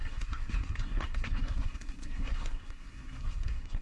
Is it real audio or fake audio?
fake